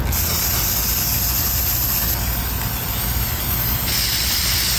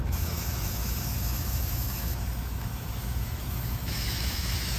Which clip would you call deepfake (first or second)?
second